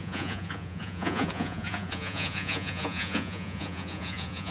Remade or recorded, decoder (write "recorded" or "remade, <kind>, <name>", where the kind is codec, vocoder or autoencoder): remade, vocoder, Vocos